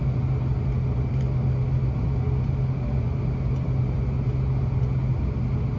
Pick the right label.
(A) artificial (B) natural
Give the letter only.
B